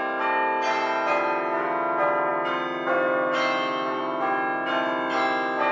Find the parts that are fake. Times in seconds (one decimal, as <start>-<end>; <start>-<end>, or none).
none